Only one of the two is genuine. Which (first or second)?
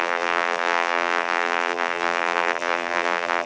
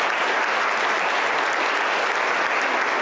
second